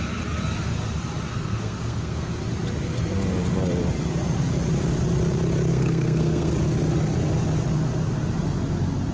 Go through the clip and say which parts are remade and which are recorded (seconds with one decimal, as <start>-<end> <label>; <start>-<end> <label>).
0.0-1.3 recorded; 1.3-2.3 remade; 2.3-5.7 recorded; 5.7-6.5 remade; 6.5-9.1 recorded